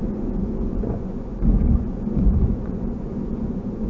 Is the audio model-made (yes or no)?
yes